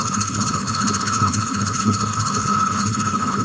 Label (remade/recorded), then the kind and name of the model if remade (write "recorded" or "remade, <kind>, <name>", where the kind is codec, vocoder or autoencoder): remade, codec, HILCodec